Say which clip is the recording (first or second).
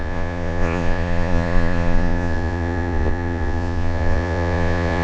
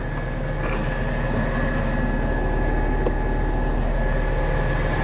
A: second